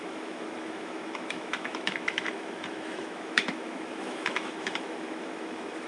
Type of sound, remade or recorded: remade